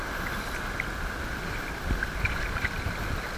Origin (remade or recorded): recorded